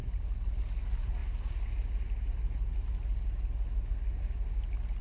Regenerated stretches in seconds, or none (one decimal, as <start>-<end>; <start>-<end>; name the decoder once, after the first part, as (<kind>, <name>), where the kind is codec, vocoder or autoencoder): none